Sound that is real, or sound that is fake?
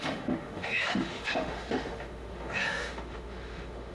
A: fake